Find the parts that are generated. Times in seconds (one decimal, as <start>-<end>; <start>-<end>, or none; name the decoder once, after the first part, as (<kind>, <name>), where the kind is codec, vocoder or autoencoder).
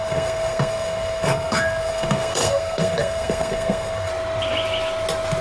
0.0-4.1 (codec, SNAC)